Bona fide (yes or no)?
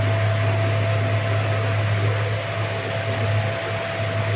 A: yes